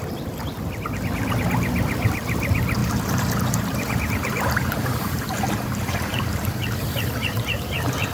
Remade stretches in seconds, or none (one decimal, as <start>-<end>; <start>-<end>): 2.8-8.1

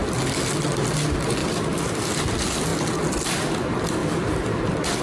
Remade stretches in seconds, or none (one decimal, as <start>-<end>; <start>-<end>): 1.4-2.2

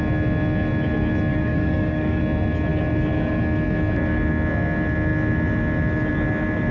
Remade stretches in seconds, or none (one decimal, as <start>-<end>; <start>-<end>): 1.3-2.2